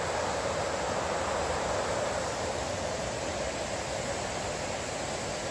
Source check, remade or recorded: recorded